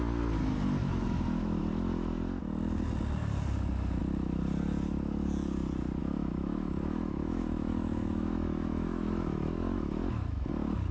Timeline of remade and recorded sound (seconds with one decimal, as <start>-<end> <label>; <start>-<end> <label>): 0.0-0.8 recorded; 0.8-1.6 remade; 1.6-6.0 recorded; 6.0-10.5 remade; 10.5-10.9 recorded